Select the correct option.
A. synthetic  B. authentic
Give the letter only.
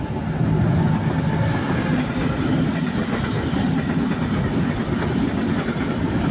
B